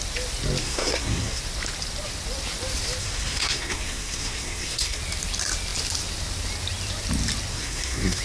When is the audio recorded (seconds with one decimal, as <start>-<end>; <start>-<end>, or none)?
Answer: 0.0-0.6; 1.4-3.0; 5.0-7.5